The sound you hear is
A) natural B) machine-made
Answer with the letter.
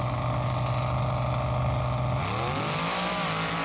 A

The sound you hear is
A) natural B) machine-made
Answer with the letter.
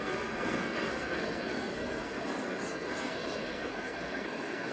B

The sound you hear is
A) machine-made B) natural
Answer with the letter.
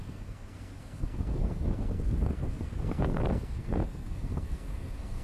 A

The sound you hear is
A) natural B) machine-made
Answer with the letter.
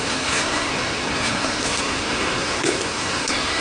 B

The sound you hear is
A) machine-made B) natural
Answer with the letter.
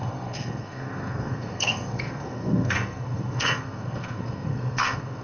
A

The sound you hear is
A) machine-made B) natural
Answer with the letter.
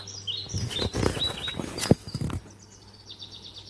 B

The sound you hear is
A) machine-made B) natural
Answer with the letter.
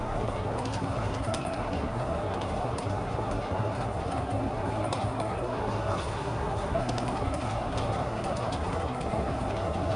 A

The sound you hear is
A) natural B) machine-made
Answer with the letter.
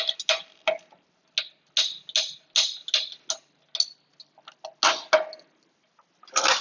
A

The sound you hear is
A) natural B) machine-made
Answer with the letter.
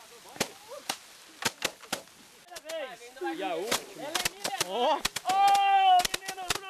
A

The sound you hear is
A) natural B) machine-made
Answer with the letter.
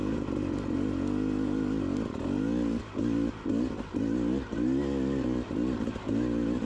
A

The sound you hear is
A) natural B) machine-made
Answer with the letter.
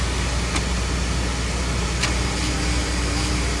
A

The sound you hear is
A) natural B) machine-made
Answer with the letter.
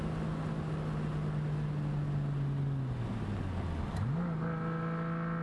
A